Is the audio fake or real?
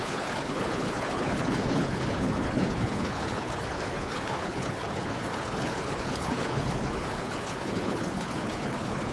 fake